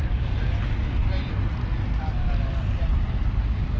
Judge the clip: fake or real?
real